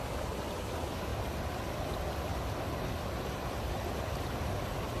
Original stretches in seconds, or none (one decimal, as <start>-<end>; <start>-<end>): 0.0-5.0

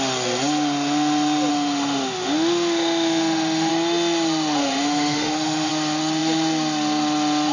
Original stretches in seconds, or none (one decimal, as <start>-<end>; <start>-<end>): 0.0-1.5; 3.7-4.6; 5.7-7.5

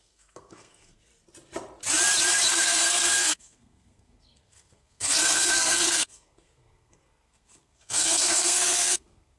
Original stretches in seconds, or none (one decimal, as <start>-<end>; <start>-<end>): 1.1-2.5

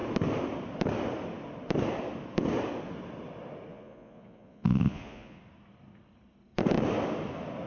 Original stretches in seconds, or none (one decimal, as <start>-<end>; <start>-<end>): 0.0-3.7; 5.4-7.7

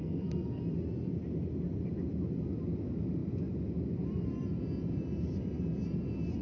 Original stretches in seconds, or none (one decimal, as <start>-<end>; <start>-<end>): 0.6-6.4

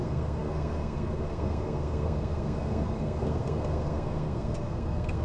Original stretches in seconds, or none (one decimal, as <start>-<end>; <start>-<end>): none